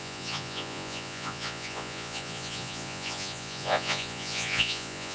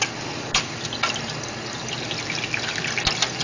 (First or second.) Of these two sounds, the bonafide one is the second